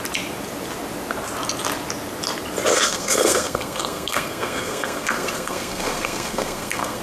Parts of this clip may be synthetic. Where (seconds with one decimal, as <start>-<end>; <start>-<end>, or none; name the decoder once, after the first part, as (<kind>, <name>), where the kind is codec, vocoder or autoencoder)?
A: 2.7-7.0 (codec, SNAC)

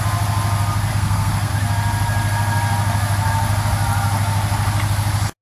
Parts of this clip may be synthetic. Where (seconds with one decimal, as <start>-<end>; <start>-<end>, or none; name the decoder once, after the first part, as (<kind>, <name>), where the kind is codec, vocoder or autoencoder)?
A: 0.9-1.5 (codec, SNAC)

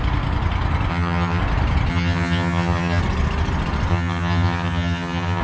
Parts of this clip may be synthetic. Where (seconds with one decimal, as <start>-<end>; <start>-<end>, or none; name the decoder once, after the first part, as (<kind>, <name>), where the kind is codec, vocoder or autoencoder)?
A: 0.9-1.4 (vocoder, HiFi-GAN); 1.9-3.0; 3.9-5.4

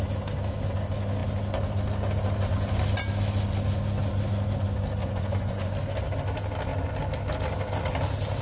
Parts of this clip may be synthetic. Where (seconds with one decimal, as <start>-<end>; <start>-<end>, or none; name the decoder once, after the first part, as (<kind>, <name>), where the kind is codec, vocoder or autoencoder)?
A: 5.0-5.7 (vocoder, Vocos)